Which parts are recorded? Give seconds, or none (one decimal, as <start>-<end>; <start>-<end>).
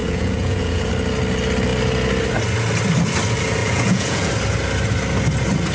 0.9-3.6; 4.3-5.7